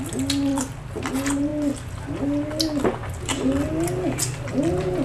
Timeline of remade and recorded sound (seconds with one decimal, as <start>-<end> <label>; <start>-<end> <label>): 0.0-5.0 recorded